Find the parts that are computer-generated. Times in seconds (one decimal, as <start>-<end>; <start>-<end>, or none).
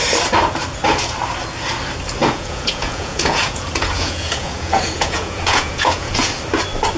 2.2-6.3